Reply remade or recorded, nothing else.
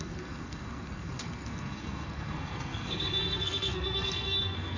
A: remade